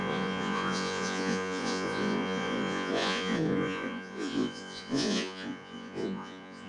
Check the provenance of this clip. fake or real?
fake